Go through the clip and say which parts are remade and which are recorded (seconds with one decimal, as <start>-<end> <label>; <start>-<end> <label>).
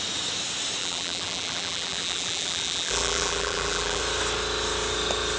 0.0-0.8 recorded; 0.8-4.0 remade; 4.0-5.4 recorded